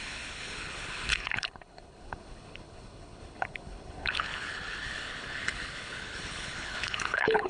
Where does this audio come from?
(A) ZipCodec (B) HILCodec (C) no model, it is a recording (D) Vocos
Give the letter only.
B